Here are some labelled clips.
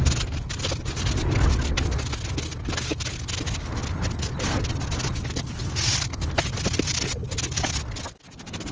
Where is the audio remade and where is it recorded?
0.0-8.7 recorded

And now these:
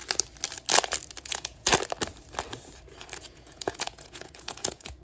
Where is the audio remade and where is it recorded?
0.0-1.2 recorded; 1.2-1.7 remade; 1.7-3.2 recorded; 3.2-5.0 remade

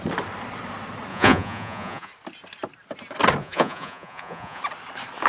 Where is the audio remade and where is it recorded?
0.0-1.1 recorded; 1.1-2.1 remade; 2.1-3.4 recorded; 3.4-4.6 remade; 4.6-5.3 recorded

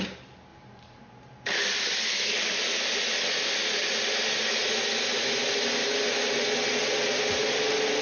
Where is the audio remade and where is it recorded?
0.0-0.5 recorded; 0.5-2.0 remade; 2.0-8.0 recorded

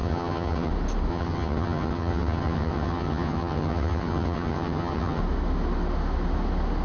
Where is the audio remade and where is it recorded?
0.0-0.7 remade; 0.7-1.1 recorded; 1.1-5.2 remade; 5.2-6.8 recorded